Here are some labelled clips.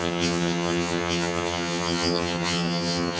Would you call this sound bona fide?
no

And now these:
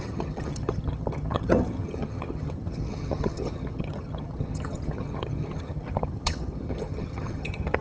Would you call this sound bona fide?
no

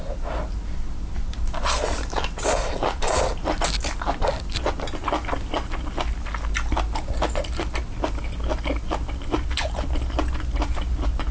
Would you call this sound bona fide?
yes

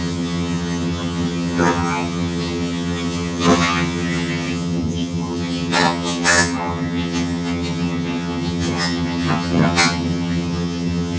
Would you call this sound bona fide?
no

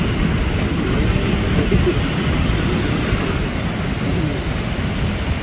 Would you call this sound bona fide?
yes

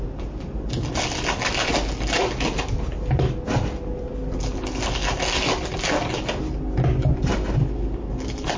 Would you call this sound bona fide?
yes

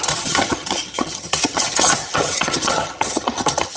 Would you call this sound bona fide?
no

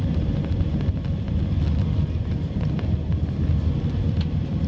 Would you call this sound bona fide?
yes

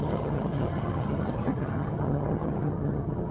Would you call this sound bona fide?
no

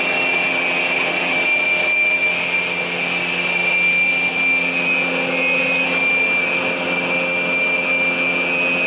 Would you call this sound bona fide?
yes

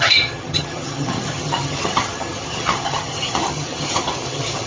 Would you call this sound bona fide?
no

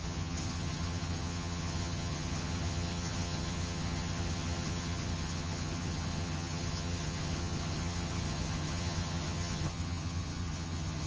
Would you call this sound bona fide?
no